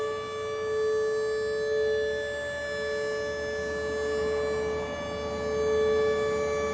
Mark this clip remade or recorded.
recorded